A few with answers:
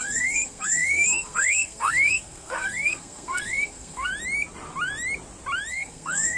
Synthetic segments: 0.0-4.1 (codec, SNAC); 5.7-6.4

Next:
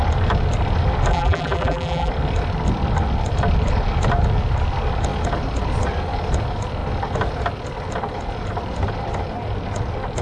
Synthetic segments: 1.1-2.1 (vocoder, BigVGAN v2)

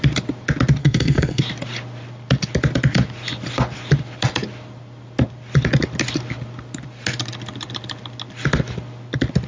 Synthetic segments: 0.8-1.4 (codec, SNAC)

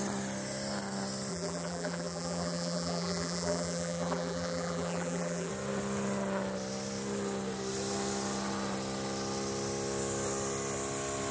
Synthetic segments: 1.3-5.5 (vocoder, BigVGAN v2)

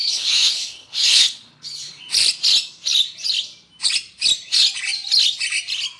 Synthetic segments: 0.0-2.0 (codec, HILCodec)

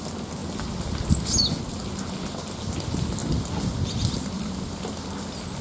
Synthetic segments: none